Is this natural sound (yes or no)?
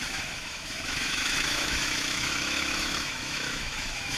no